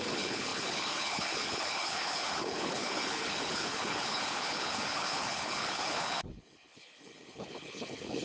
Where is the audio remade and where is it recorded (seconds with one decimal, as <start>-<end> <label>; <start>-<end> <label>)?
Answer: 0.0-8.2 remade